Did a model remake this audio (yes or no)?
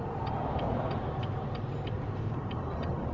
yes